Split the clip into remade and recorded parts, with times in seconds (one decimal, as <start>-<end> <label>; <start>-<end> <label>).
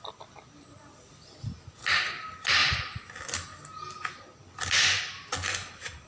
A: 0.0-6.1 recorded